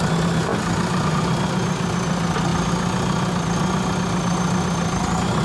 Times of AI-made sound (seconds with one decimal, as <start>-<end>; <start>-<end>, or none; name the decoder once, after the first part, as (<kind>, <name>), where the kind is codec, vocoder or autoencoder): none